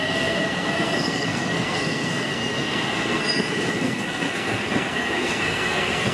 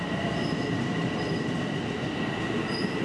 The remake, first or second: first